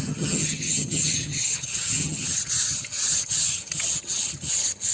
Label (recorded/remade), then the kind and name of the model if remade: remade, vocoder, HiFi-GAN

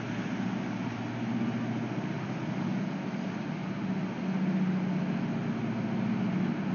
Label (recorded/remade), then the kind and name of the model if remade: recorded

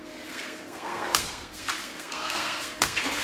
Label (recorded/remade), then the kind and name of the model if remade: remade, codec, SNAC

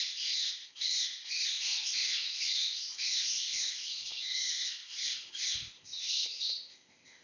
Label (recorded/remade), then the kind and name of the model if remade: remade, codec, ZipCodec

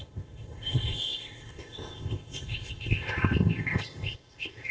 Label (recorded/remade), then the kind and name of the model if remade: remade, codec, ZipCodec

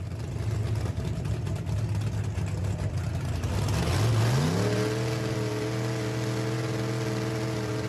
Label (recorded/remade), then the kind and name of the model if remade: recorded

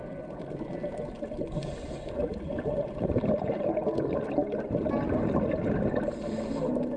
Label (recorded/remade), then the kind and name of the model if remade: recorded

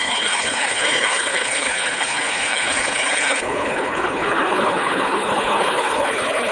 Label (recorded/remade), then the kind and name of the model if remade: remade, codec, HILCodec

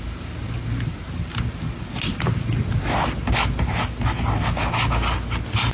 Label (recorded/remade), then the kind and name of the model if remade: recorded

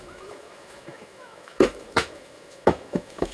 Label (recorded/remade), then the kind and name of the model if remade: remade, autoencoder, DAC-VAE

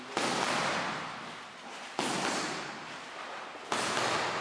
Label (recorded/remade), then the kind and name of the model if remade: recorded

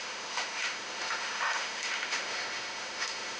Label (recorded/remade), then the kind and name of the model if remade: remade, autoencoder, DAC-VAE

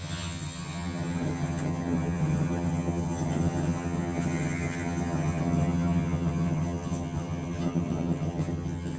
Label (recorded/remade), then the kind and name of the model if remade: remade, vocoder, HiFi-GAN